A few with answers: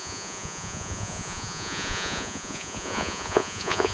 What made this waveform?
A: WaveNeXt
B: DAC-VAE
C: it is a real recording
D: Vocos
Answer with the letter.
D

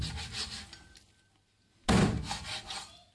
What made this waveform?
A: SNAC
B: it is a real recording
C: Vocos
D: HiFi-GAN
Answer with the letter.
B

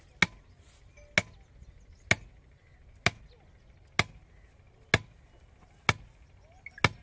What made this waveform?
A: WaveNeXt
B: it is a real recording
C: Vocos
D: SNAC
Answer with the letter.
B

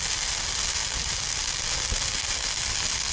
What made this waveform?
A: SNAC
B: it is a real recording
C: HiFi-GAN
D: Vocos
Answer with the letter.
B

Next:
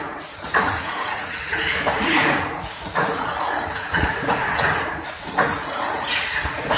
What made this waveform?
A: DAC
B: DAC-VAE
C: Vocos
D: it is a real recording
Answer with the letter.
C